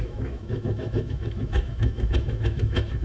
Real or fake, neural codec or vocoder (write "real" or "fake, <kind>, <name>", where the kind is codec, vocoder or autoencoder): fake, autoencoder, DAC-VAE